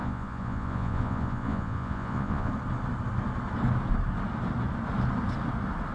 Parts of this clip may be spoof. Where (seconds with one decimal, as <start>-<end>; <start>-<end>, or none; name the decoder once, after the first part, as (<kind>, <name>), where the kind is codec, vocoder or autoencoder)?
0.0-2.5 (vocoder, Vocos)